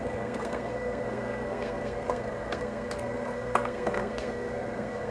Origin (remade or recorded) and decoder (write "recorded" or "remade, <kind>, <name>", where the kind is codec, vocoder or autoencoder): remade, codec, SNAC